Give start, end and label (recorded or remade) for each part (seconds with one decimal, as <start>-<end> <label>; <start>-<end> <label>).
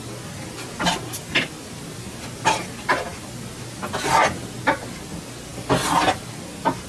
0.0-6.9 recorded